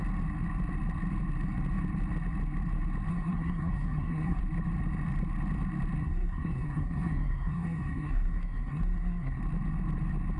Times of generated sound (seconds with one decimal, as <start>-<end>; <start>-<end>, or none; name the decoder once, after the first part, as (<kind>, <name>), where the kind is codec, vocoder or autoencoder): 3.1-4.4 (codec, SNAC); 6.0-9.4